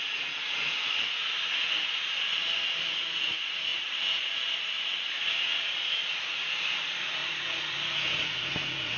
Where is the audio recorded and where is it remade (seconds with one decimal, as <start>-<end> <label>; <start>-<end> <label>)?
0.0-2.1 remade; 2.1-2.9 recorded; 2.9-9.0 remade